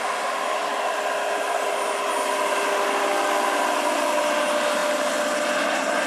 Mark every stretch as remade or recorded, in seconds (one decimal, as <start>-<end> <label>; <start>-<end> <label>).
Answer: 0.0-6.1 recorded